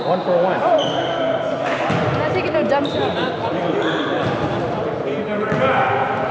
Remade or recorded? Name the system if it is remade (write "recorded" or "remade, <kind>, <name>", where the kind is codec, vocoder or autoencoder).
recorded